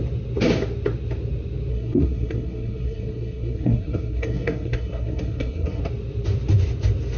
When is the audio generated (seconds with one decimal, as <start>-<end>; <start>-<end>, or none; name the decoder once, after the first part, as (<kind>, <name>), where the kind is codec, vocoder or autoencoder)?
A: 1.7-5.8 (codec, SNAC)